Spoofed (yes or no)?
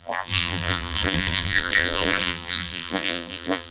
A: yes